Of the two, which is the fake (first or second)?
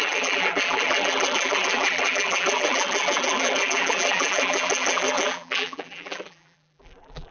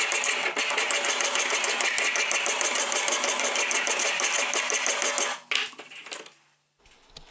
first